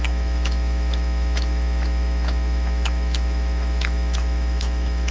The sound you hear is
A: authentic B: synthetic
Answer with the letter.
B